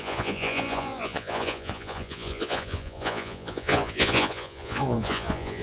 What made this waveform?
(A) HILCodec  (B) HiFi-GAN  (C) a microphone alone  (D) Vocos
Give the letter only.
D